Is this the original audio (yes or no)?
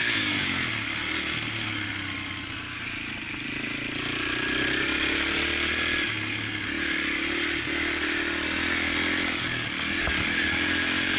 yes